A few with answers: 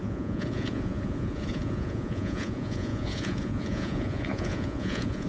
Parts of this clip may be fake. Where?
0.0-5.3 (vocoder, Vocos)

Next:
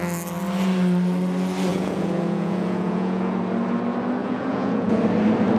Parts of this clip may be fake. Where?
1.7-3.4 (vocoder, Vocos); 4.2-5.0

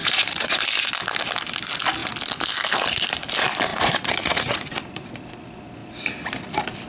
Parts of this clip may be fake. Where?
0.0-0.6 (vocoder, Vocos); 3.7-5.1

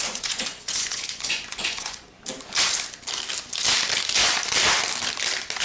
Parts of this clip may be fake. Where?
0.0-2.1 (vocoder, Vocos)